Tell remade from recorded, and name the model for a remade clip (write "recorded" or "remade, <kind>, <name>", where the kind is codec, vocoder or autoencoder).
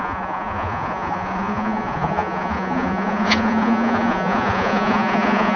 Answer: remade, vocoder, Vocos